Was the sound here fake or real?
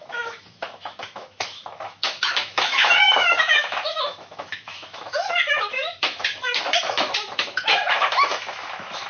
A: fake